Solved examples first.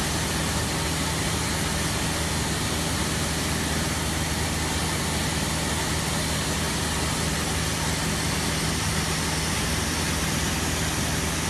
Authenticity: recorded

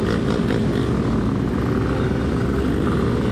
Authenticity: recorded